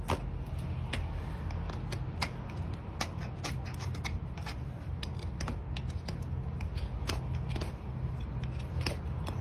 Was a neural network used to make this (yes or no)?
no